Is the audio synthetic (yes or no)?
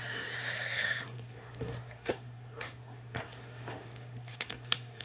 yes